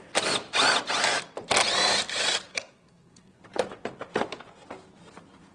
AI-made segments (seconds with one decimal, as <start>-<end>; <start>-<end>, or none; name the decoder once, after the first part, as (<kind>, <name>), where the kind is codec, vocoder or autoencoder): 2.5-3.4 (codec, SNAC)